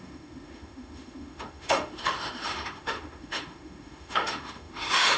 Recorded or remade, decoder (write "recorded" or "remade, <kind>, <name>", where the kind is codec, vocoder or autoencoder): remade, autoencoder, DAC-VAE